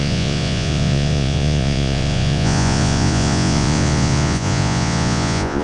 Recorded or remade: remade